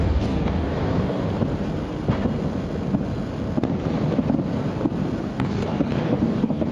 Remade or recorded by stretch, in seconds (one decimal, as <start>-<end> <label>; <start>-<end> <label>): 0.0-1.2 remade; 1.2-5.2 recorded; 5.2-6.7 remade